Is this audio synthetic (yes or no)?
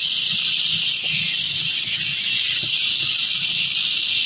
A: no